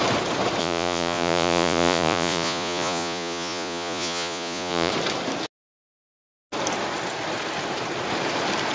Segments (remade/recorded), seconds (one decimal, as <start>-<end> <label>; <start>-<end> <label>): 0.0-0.6 recorded; 0.6-4.9 remade; 4.9-8.7 recorded